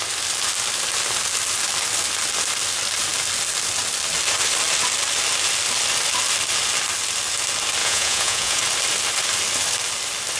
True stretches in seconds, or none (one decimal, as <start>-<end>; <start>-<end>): 0.0-7.8; 8.6-10.4